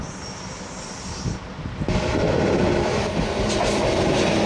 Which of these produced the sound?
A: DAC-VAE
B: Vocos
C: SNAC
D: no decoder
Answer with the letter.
D